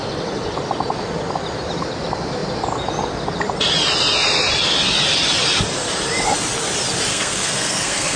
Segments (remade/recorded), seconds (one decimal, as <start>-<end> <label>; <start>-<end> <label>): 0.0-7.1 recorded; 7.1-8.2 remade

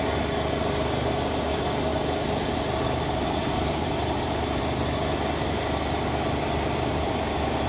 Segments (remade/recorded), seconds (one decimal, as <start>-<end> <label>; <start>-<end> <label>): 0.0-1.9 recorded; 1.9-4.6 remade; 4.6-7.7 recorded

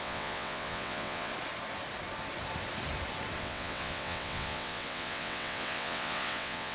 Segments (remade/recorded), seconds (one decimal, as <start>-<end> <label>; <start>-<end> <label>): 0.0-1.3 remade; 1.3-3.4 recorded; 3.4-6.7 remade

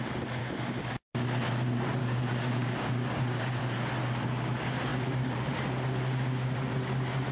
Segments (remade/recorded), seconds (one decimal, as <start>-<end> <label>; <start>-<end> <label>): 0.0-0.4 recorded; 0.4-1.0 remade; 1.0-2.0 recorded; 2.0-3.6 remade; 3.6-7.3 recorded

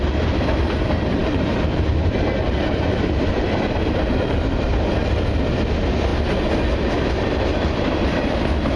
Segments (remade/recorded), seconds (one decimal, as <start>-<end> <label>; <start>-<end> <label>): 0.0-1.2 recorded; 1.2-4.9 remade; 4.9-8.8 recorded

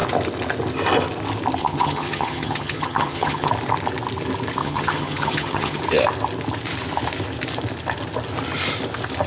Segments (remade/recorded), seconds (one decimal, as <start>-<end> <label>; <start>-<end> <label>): 0.0-1.6 recorded; 1.6-3.5 remade; 3.5-4.6 recorded; 4.6-5.8 remade; 5.8-9.3 recorded

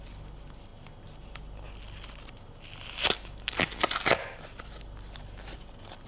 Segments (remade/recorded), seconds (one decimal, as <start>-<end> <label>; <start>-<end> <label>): 0.0-6.1 recorded

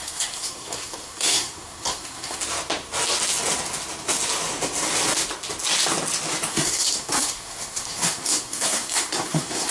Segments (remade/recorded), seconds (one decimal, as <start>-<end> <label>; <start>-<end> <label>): 0.0-2.4 remade; 2.4-6.5 recorded; 6.5-9.7 remade